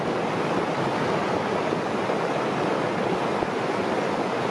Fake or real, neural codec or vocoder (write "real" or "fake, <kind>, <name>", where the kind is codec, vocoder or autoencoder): real